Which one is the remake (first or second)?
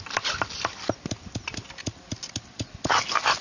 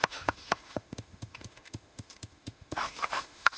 second